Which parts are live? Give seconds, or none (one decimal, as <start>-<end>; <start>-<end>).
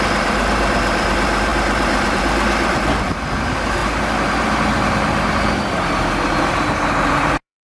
none